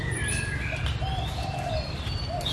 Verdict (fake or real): fake